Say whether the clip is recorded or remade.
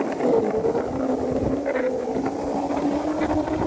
recorded